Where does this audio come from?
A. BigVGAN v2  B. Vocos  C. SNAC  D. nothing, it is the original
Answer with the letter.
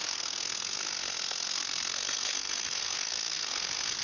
C